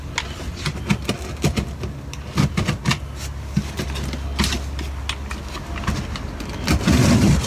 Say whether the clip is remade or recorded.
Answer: recorded